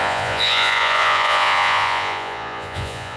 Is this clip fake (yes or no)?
yes